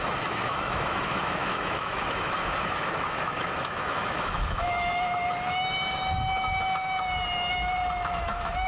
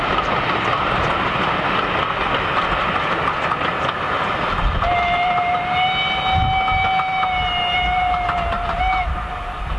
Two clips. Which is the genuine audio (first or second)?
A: second